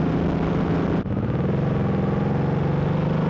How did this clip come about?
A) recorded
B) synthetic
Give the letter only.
A